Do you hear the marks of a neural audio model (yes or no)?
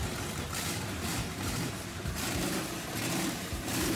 yes